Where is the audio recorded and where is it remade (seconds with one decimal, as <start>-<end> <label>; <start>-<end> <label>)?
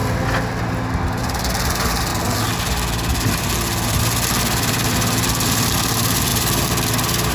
0.0-7.3 recorded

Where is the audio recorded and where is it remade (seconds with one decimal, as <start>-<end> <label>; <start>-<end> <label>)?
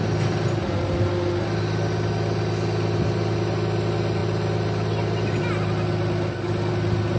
0.0-7.2 recorded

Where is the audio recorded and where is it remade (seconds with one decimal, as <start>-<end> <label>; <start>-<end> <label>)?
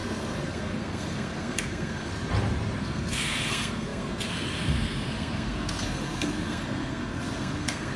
0.0-2.1 remade; 2.1-2.8 recorded; 2.8-8.0 remade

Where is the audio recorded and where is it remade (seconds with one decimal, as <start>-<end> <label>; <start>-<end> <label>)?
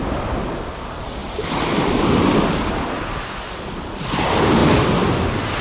0.0-5.6 recorded